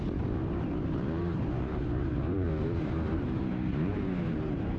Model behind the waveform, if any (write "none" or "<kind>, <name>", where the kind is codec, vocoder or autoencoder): vocoder, BigVGAN v2